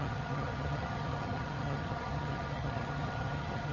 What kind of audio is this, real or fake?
fake